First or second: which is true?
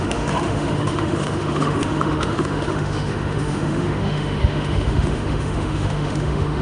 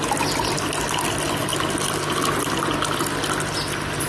second